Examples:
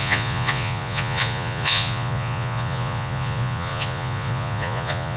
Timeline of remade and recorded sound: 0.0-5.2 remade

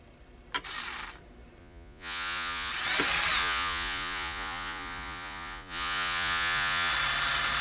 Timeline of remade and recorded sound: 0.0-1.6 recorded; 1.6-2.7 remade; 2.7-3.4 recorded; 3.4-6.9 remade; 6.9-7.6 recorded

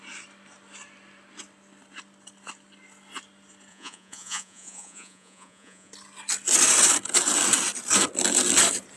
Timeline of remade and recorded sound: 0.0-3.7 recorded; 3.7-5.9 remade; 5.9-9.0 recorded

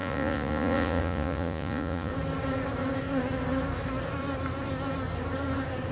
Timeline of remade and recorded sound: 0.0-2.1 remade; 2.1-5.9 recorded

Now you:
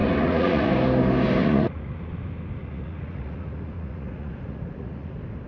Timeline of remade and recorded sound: 0.0-0.7 remade; 0.7-1.4 recorded; 1.4-2.0 remade; 2.0-2.6 recorded; 2.6-5.1 remade; 5.1-5.5 recorded

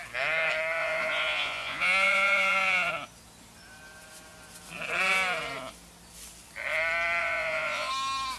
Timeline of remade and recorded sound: 0.0-0.8 recorded; 0.8-2.9 remade; 2.9-7.2 recorded; 7.2-7.9 remade; 7.9-8.4 recorded

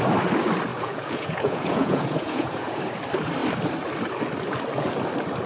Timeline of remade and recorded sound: 0.0-0.7 recorded; 0.7-2.8 remade; 2.8-5.5 recorded